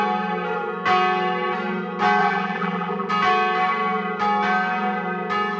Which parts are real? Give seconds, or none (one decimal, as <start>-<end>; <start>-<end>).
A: 0.0-2.2; 3.1-5.6